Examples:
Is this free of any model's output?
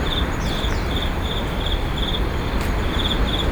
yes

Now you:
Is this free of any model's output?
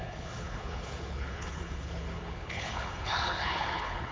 no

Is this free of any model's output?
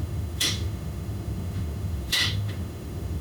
no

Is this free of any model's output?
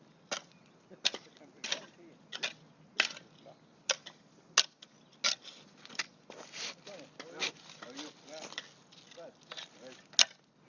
yes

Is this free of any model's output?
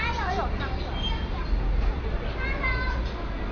yes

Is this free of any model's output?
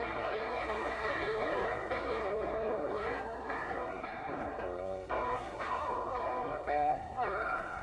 no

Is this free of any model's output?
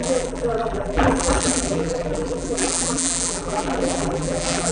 no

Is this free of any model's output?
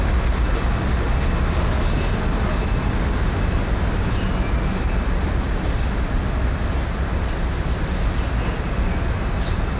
yes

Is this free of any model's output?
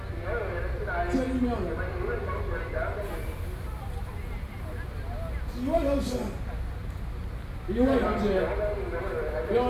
yes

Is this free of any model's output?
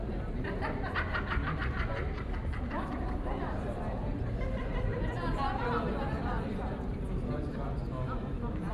yes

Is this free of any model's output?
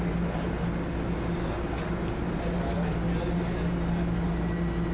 yes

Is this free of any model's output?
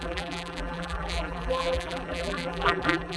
no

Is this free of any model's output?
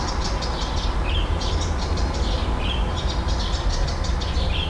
yes